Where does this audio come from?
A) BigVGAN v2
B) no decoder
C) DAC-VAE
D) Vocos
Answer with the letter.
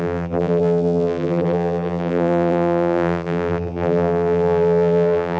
A